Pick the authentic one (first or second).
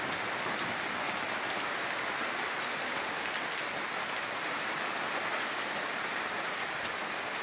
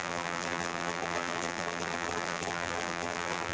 first